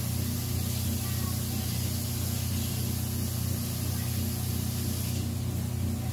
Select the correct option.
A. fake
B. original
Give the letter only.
B